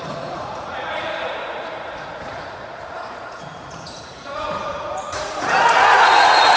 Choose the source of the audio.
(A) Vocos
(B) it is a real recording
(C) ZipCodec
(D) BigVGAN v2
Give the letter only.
A